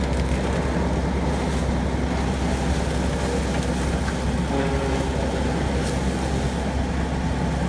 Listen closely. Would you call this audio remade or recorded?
recorded